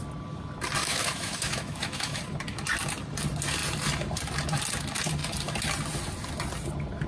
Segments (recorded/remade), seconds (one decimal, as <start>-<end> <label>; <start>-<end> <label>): 0.0-0.8 recorded; 0.8-2.2 remade; 2.2-7.1 recorded